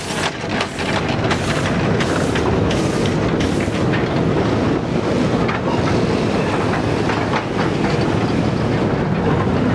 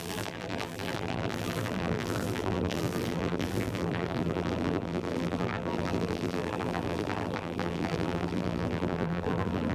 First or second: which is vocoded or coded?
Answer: second